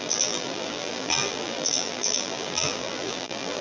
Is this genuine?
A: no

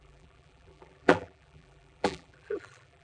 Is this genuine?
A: no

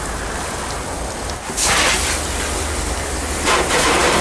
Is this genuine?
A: yes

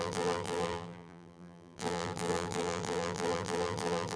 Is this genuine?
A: no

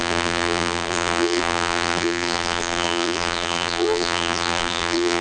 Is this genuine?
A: no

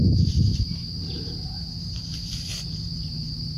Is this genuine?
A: no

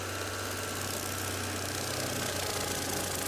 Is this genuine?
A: yes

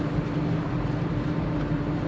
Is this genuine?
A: no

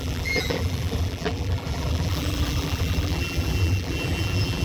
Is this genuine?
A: no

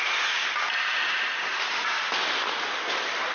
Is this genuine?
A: no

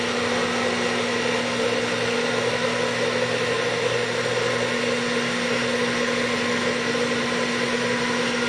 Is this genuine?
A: yes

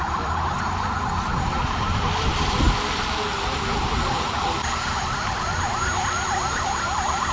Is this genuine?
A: no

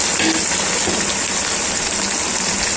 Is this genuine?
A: yes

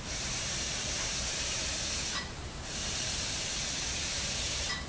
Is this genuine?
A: no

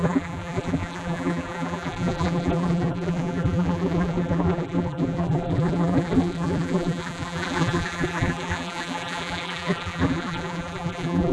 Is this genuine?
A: no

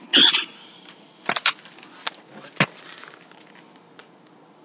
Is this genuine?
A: yes